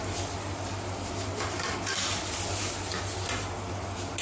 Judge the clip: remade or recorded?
recorded